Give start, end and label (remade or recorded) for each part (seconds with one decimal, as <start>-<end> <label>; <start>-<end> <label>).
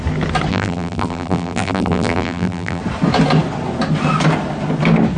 0.0-0.5 recorded; 0.5-2.8 remade; 2.8-5.2 recorded